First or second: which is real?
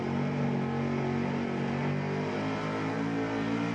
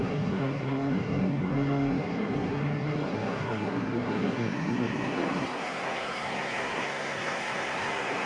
first